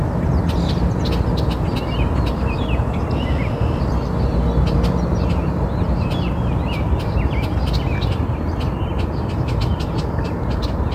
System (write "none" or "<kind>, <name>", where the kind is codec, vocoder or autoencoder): none